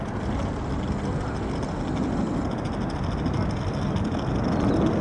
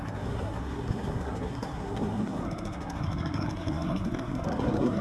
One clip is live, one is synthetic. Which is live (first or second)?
first